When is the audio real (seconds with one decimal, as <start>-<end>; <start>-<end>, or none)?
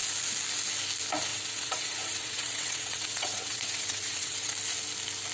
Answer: 0.0-1.3; 4.5-5.3